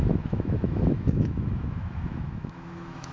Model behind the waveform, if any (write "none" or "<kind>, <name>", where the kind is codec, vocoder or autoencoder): autoencoder, DAC-VAE